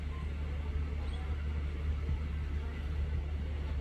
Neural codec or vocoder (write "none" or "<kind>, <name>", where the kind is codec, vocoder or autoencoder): none